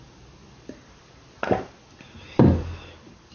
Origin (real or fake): real